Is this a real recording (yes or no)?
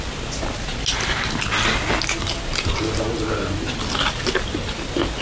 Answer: yes